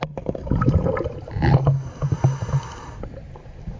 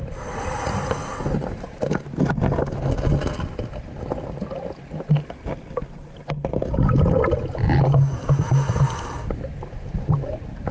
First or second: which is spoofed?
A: first